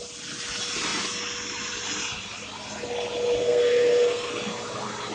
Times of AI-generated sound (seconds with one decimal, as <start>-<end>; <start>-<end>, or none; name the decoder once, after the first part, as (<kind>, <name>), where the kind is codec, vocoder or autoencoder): 3.4-4.3 (codec, SNAC)